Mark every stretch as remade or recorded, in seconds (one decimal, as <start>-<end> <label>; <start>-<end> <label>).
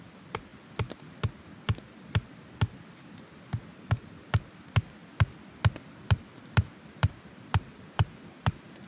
0.0-8.9 recorded